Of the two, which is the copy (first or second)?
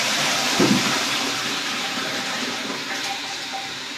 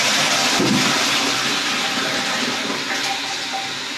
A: first